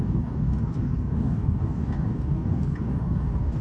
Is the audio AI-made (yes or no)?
yes